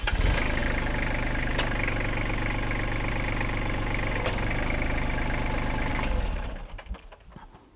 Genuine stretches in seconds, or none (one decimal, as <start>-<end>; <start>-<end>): 0.0-5.9; 6.5-7.8